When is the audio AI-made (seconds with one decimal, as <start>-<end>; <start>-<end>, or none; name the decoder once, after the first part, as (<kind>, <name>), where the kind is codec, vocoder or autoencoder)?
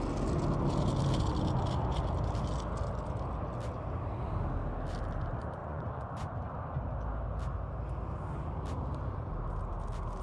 5.6-6.3 (vocoder, Vocos)